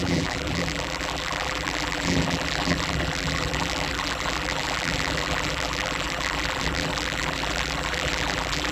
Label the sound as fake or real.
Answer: fake